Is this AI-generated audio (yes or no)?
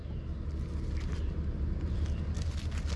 no